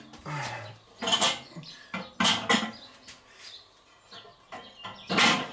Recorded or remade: recorded